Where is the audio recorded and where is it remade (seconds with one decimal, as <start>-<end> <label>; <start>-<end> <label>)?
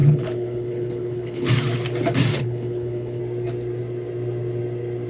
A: 0.0-1.5 remade; 1.5-2.3 recorded; 2.3-3.2 remade; 3.2-5.1 recorded